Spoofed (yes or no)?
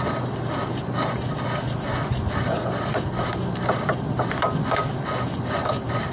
no